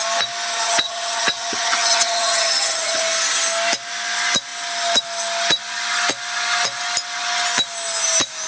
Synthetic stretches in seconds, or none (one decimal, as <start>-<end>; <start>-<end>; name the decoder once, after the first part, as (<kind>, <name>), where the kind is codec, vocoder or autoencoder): 0.5-3.0 (vocoder, HiFi-GAN)